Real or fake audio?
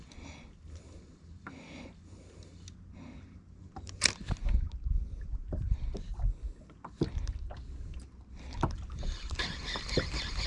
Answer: real